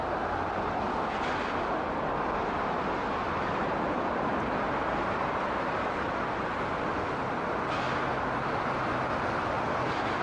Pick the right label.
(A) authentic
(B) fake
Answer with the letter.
A